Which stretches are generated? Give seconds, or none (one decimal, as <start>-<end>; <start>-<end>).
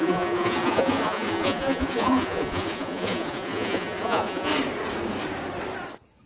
0.0-4.5